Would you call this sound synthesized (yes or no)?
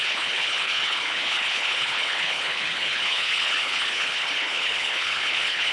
yes